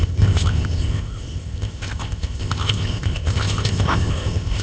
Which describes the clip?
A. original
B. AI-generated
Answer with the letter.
B